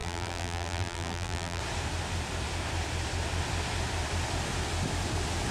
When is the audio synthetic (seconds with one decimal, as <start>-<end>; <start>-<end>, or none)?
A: 0.0-1.6